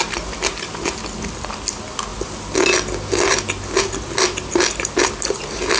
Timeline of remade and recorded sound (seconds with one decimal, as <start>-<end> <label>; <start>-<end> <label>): 0.0-5.8 recorded